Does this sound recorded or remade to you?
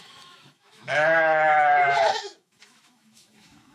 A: remade